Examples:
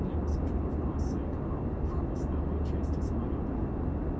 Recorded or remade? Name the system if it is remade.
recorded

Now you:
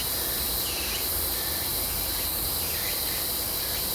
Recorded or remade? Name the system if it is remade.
recorded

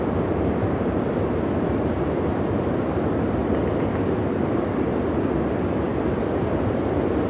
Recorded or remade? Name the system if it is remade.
recorded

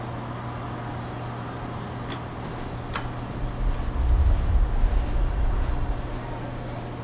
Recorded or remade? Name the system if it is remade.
recorded